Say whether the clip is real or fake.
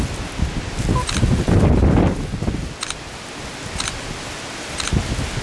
real